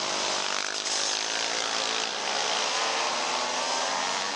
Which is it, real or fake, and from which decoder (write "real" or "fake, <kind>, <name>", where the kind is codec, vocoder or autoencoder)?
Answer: real